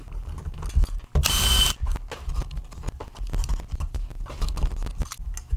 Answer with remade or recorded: recorded